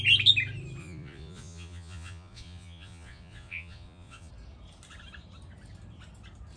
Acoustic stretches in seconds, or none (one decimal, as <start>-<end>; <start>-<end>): 0.0-0.8; 4.3-6.6